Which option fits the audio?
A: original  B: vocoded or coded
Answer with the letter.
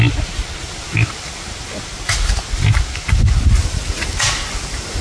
A